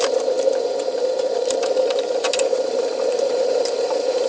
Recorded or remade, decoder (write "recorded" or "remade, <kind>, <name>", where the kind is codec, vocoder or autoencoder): remade, vocoder, BigVGAN v2